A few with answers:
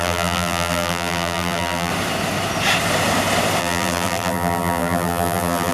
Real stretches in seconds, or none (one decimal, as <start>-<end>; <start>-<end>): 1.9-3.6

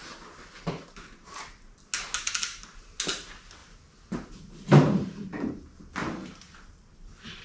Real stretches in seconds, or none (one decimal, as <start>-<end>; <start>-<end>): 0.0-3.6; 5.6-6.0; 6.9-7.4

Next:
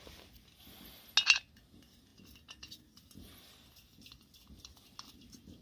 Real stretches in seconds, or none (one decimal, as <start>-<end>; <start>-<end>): 0.0-5.6

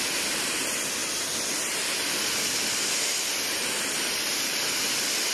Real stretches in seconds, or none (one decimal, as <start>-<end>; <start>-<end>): 0.0-1.0; 4.2-5.3

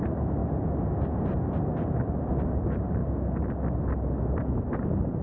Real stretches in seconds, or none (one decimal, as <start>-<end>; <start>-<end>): 0.4-1.6; 3.0-4.6

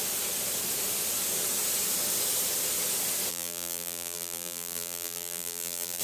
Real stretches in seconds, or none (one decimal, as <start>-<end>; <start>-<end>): 0.0-3.3

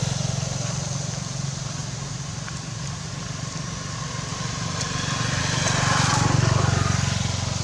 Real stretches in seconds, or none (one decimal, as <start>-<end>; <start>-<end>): 0.0-6.1; 6.6-7.6